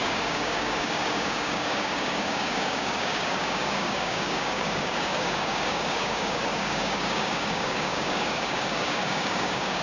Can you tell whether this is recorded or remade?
remade